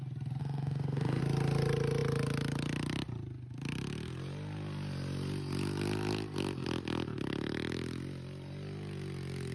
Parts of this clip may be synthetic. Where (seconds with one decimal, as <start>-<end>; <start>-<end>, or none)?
0.4-1.2